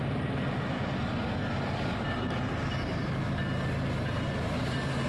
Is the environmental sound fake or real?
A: real